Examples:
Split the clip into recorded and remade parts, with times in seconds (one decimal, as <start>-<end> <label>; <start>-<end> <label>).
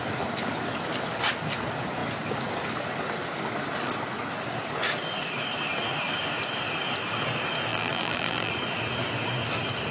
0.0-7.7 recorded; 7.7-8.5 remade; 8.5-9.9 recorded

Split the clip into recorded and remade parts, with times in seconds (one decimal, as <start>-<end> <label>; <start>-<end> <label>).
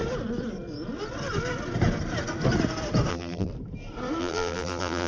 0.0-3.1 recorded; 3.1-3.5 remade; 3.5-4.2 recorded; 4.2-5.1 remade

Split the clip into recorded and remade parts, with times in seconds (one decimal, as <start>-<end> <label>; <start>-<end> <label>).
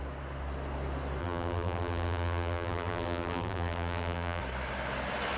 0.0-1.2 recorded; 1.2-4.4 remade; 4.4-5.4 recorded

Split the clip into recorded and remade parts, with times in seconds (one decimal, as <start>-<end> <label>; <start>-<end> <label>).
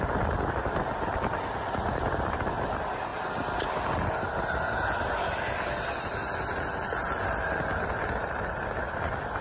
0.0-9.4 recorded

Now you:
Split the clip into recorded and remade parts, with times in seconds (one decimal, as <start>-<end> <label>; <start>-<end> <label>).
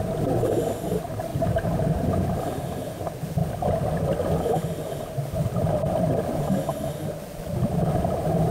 0.0-1.3 recorded; 1.3-2.4 remade; 2.4-8.5 recorded